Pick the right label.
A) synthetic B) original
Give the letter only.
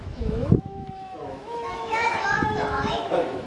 A